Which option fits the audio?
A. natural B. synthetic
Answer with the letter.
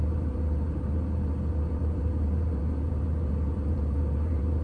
B